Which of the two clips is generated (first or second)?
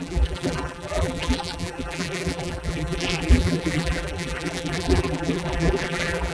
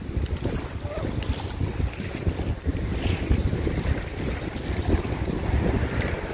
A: first